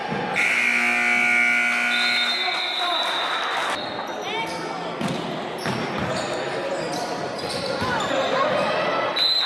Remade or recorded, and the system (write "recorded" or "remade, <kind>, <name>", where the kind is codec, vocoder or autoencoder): recorded